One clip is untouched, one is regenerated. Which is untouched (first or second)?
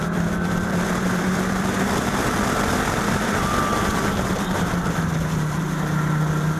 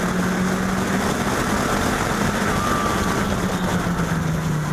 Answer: second